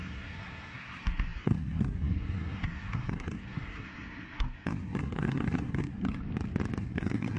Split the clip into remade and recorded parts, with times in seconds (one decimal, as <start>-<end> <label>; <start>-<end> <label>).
0.0-6.2 remade; 6.2-6.8 recorded; 6.8-7.4 remade